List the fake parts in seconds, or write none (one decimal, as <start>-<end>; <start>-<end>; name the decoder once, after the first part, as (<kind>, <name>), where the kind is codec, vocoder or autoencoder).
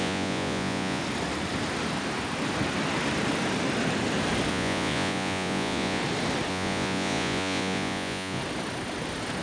0.0-1.0 (vocoder, Vocos); 4.5-6.0; 6.5-8.4